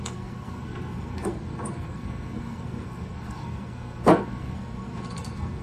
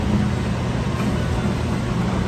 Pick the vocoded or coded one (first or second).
first